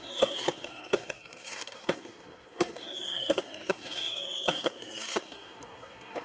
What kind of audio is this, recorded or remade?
remade